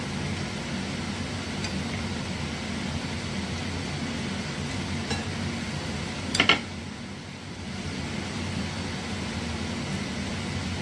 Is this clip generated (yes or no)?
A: no